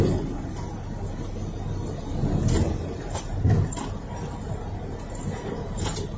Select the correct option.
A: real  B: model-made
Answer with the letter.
A